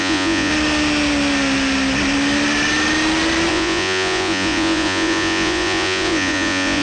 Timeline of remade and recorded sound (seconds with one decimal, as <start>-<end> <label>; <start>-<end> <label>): 0.0-0.5 remade; 0.5-3.5 recorded; 3.5-6.8 remade